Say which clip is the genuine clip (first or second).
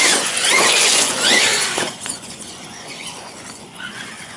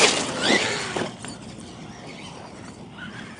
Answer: second